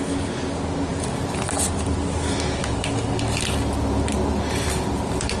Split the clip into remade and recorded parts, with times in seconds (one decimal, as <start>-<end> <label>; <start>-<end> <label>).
0.0-5.4 recorded

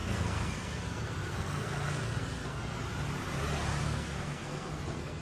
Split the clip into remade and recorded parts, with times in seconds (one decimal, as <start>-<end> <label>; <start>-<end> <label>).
0.0-2.8 remade; 2.8-3.8 recorded; 3.8-5.2 remade

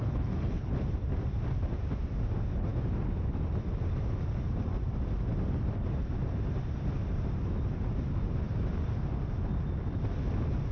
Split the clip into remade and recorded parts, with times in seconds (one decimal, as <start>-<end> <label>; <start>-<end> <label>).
0.0-0.7 remade; 0.7-10.7 recorded

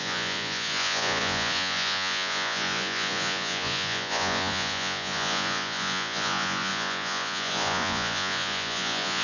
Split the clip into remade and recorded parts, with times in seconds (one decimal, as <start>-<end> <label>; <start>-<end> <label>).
0.0-9.2 remade

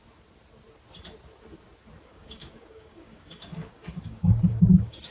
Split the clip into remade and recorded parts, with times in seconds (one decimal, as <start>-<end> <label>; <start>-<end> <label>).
0.0-2.1 recorded; 2.1-5.1 remade

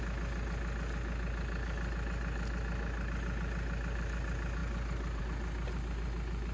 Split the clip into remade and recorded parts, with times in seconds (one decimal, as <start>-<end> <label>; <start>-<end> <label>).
0.0-6.5 recorded